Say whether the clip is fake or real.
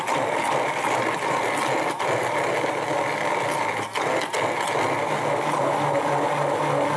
real